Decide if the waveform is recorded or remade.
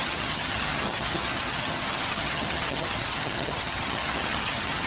remade